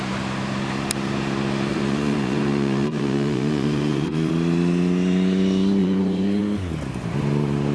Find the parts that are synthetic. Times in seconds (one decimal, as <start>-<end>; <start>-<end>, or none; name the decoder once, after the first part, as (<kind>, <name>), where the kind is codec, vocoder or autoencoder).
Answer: 1.7-4.3 (vocoder, Vocos); 5.8-6.4